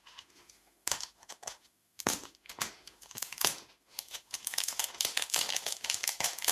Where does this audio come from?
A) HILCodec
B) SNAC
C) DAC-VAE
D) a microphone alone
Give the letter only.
C